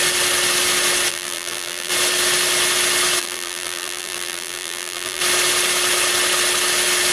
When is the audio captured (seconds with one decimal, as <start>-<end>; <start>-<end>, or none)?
0.0-1.1; 1.9-3.2; 5.2-7.1